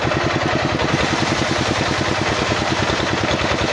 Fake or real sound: real